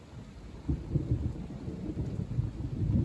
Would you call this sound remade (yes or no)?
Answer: no